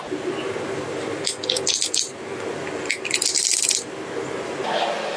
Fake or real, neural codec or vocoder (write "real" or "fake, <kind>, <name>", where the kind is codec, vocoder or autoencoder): real